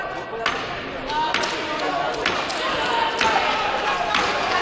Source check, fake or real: real